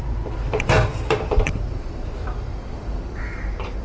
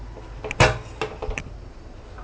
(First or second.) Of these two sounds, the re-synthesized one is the first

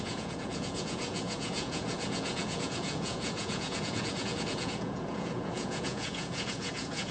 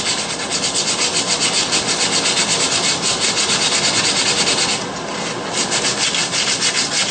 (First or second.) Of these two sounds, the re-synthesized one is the first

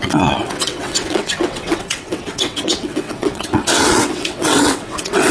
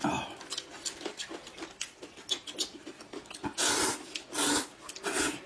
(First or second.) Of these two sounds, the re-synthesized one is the first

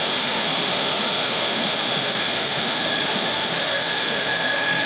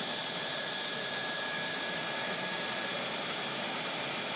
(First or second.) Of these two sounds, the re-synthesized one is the first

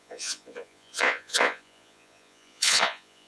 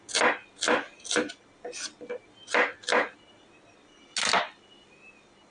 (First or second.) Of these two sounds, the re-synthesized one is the first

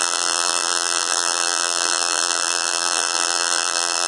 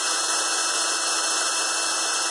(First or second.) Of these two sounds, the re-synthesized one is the first